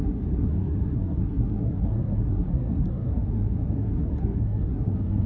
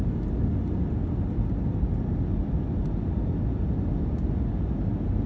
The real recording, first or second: second